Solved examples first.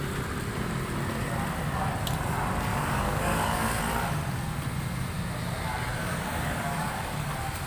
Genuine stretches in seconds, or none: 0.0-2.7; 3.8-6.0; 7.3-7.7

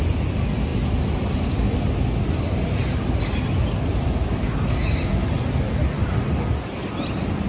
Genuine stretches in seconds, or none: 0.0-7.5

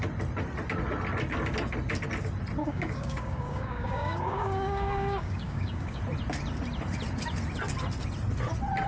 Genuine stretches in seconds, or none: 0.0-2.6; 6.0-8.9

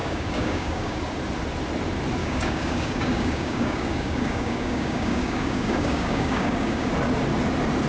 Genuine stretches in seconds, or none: 1.0-2.2; 6.9-7.9

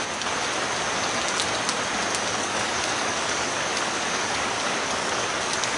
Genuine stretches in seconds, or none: 0.0-2.3

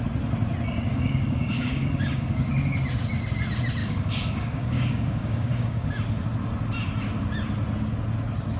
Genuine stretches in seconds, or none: 0.0-0.9; 2.5-3.8; 5.9-8.6

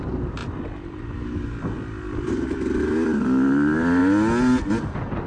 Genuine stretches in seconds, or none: 0.0-5.3